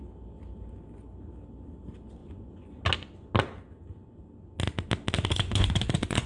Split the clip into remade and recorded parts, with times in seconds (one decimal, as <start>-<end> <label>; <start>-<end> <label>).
0.0-2.2 recorded; 2.2-2.8 remade; 2.8-5.3 recorded; 5.3-6.3 remade